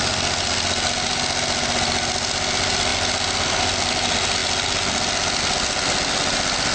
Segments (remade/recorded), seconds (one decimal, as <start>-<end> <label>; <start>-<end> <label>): 0.0-6.7 recorded